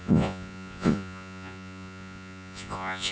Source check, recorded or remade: remade